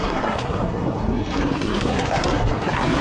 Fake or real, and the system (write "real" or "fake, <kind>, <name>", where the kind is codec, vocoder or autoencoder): fake, codec, SNAC